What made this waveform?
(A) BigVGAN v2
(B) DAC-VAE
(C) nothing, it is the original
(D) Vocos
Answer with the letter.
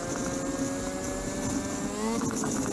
C